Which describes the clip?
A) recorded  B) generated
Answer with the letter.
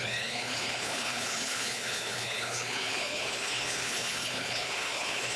B